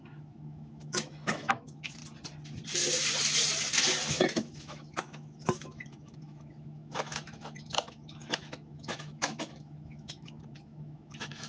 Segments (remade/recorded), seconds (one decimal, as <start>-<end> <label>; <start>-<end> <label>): 0.0-2.0 remade; 2.0-4.1 recorded; 4.1-11.5 remade